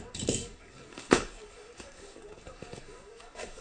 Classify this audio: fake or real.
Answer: fake